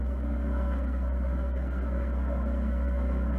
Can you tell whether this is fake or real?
fake